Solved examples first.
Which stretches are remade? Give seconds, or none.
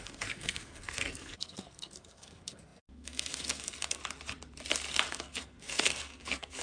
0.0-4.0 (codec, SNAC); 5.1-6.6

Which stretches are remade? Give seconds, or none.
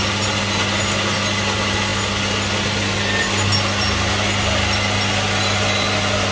none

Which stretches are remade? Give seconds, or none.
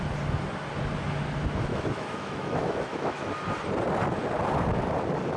1.7-3.3 (autoencoder, DAC-VAE)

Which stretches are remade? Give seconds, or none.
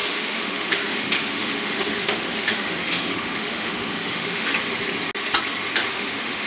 0.0-4.5 (autoencoder, DAC-VAE); 5.9-6.5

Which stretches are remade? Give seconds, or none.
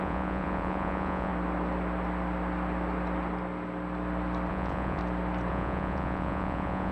0.0-1.3 (vocoder, Vocos); 4.5-5.0; 5.5-6.9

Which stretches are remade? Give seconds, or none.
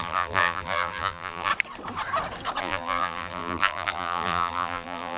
0.0-1.5 (vocoder, BigVGAN v2); 2.6-5.2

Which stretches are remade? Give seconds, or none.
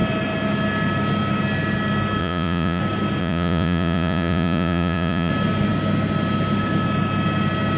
2.2-2.8 (vocoder, Vocos); 3.2-5.3